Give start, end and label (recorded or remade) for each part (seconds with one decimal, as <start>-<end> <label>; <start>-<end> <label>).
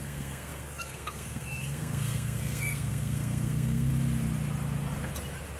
0.0-3.9 remade; 3.9-5.6 recorded